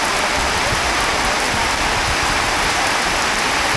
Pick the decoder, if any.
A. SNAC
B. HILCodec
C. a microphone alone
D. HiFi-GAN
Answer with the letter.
C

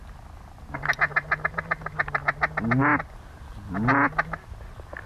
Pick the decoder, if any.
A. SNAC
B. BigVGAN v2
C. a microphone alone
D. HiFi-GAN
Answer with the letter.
C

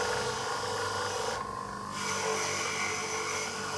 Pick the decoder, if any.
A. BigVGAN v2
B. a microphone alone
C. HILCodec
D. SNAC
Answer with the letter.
B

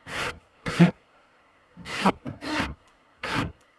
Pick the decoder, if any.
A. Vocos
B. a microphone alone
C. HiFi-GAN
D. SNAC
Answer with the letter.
D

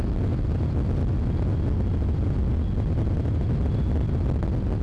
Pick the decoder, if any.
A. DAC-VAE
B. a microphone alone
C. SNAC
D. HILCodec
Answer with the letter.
B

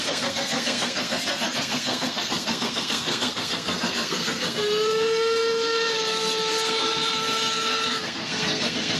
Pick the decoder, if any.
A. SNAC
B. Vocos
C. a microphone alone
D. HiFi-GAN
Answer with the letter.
A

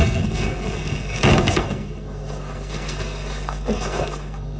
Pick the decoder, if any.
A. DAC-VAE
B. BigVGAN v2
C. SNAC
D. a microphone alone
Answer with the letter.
C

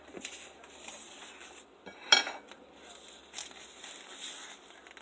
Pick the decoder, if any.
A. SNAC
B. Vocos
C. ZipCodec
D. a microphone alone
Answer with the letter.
D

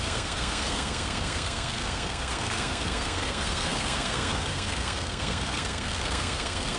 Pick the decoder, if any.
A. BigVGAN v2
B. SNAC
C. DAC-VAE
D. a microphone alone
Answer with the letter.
B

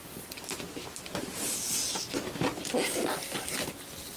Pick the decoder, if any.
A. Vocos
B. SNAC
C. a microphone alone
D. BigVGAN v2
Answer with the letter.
C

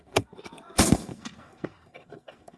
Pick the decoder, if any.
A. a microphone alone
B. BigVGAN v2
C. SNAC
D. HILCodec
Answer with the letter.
C